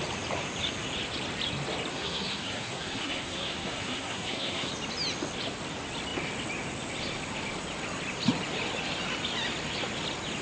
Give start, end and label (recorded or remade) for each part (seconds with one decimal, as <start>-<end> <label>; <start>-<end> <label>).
0.0-1.9 recorded; 1.9-4.7 remade; 4.7-10.4 recorded

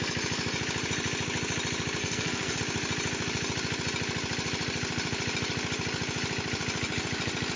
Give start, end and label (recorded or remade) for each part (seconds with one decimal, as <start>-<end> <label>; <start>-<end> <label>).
0.0-2.0 recorded; 2.0-2.6 remade; 2.6-7.6 recorded

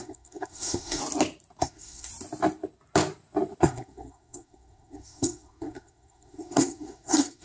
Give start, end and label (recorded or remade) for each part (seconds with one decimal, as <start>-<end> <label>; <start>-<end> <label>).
0.0-1.0 remade; 1.0-1.6 recorded; 1.6-2.1 remade; 2.1-3.6 recorded; 3.6-7.4 remade